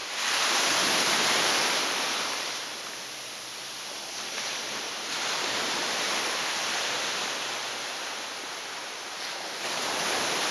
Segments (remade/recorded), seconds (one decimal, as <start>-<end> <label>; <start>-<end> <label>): 0.0-10.5 remade